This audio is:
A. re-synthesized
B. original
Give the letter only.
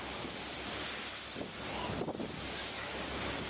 B